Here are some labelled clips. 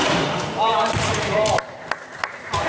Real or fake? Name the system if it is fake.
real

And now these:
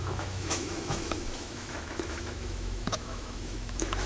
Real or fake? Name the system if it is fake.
fake, autoencoder, DAC-VAE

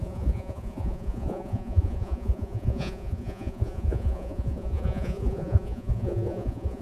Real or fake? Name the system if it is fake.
fake, vocoder, Vocos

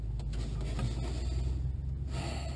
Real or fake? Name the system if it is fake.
real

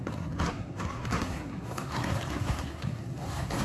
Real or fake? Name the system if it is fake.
fake, codec, SNAC